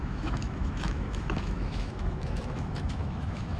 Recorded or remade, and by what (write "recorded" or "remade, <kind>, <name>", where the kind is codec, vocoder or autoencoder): remade, autoencoder, DAC-VAE